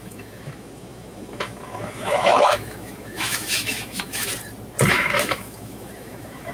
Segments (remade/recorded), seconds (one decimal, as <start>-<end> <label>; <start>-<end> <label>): 0.0-4.3 remade; 4.3-4.9 recorded; 4.9-6.5 remade